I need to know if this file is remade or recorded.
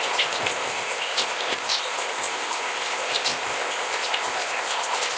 remade